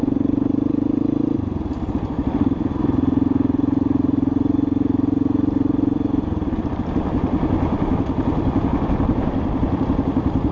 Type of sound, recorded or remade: remade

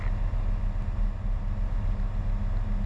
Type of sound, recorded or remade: recorded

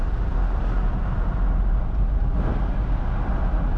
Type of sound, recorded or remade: recorded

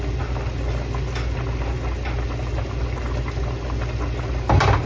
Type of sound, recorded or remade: recorded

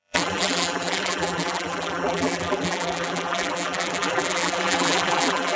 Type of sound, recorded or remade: remade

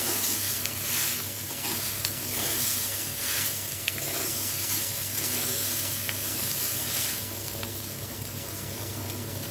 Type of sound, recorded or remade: remade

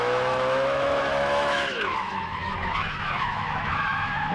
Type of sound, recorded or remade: remade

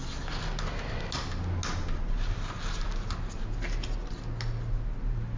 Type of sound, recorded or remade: recorded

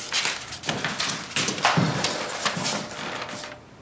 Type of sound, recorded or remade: recorded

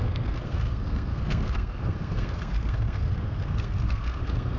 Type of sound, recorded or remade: remade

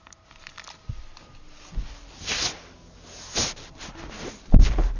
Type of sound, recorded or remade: recorded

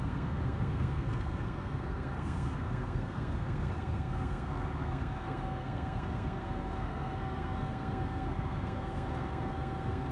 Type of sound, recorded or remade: remade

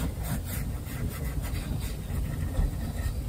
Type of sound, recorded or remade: recorded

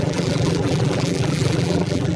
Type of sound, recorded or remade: remade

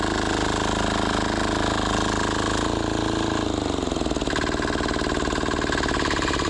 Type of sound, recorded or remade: recorded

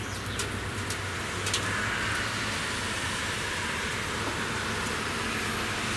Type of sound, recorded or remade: recorded